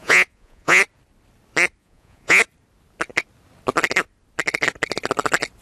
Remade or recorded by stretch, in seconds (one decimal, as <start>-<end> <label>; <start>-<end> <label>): 0.0-0.8 remade; 0.8-1.8 recorded; 1.8-2.4 remade; 2.4-5.6 recorded